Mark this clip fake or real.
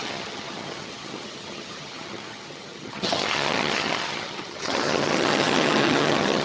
fake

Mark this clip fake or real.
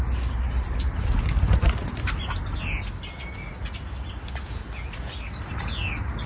real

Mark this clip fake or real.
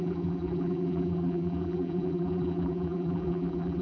fake